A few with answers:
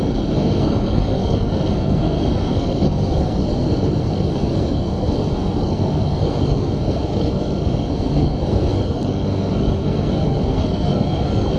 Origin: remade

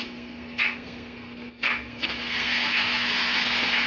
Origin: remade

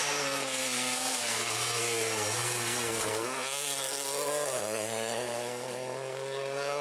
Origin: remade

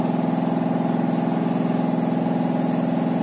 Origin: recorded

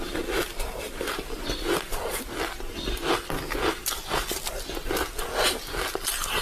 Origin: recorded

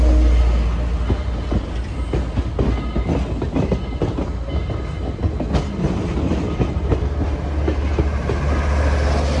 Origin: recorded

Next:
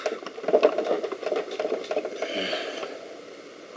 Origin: recorded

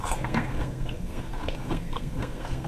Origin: remade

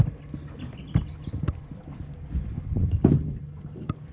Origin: recorded